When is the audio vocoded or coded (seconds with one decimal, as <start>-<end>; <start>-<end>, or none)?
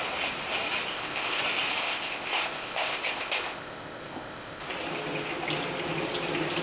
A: 0.9-1.4; 1.8-4.6